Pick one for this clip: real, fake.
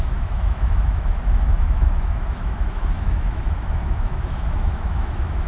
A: fake